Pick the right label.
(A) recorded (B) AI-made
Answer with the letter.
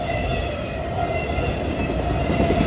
A